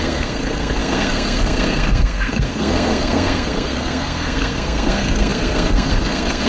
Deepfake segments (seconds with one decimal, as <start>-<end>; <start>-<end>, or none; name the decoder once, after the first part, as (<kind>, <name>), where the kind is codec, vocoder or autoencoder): 0.0-6.5 (codec, SNAC)